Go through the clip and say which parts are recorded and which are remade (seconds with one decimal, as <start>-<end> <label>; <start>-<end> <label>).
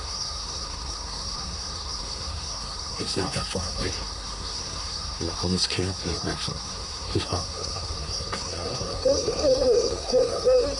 0.0-10.8 remade